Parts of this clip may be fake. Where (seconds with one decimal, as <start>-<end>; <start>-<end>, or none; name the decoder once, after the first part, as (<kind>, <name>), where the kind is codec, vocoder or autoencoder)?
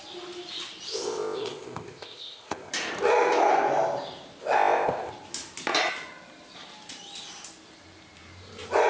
0.9-2.7 (codec, ZipCodec); 4.4-5.1